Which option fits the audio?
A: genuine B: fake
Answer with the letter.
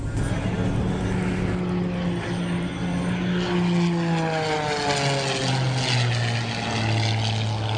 A